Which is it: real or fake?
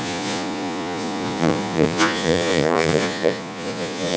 fake